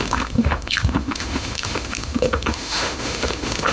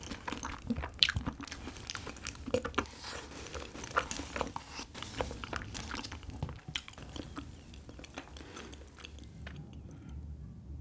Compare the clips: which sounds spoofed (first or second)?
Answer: first